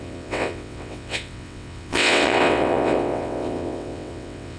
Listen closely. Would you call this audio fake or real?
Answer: fake